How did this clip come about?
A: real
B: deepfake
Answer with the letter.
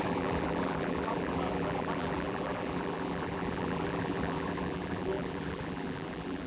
B